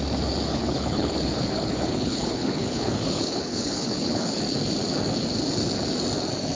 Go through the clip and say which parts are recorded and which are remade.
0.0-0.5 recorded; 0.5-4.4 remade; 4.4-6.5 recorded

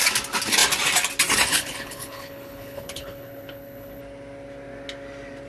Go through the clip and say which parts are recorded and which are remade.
0.0-1.5 recorded; 1.5-4.0 remade; 4.0-5.5 recorded